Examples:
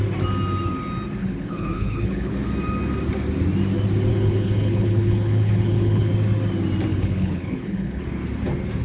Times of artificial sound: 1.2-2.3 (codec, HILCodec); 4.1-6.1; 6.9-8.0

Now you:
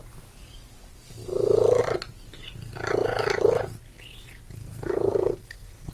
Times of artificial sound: 4.6-5.9 (codec, SNAC)

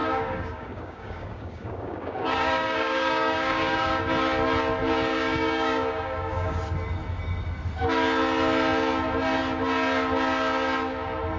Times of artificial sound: 0.0-4.0 (codec, DAC); 5.1-6.6